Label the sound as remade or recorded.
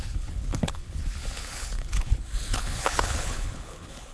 remade